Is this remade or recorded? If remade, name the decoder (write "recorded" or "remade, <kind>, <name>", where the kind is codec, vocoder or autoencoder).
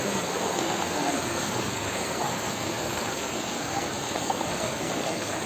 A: remade, codec, SNAC